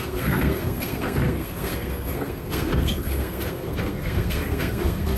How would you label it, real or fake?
fake